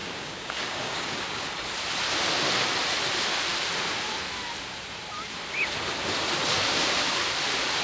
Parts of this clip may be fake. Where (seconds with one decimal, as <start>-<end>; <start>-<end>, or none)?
0.0-1.5